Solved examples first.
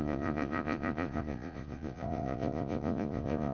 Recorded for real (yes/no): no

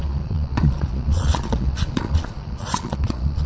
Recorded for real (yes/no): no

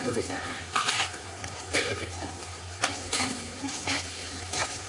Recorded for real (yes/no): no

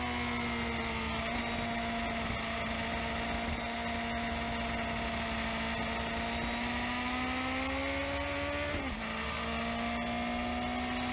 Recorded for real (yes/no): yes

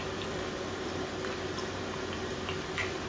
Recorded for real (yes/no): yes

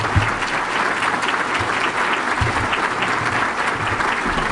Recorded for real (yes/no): yes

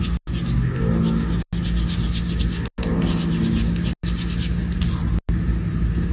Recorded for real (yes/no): yes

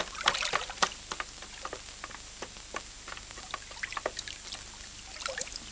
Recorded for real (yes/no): yes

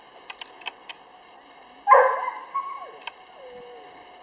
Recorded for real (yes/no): yes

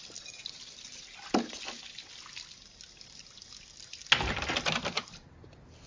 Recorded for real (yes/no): yes